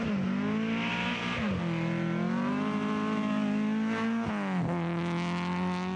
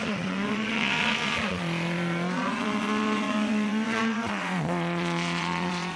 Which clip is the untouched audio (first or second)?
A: first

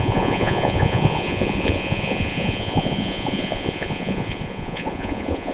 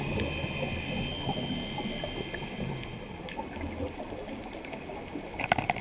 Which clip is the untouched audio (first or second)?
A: second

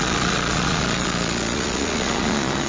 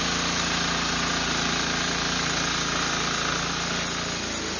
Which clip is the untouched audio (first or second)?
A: second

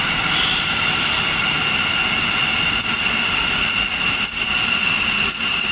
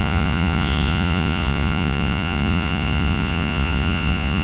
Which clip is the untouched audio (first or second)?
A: first